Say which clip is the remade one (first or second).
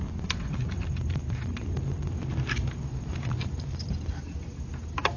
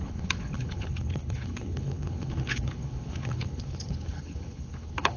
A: second